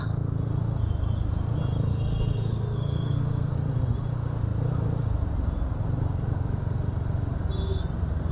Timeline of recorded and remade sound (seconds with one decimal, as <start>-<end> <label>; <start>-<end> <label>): 0.0-1.9 recorded; 1.9-3.5 remade; 3.5-8.3 recorded